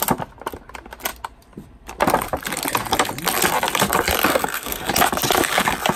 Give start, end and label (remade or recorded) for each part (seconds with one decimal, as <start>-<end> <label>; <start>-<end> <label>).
0.0-4.3 recorded; 4.3-4.9 remade; 4.9-6.0 recorded